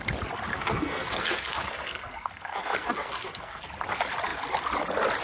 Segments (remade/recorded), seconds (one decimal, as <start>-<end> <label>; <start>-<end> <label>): 0.0-0.5 recorded; 0.5-3.6 remade; 3.6-5.2 recorded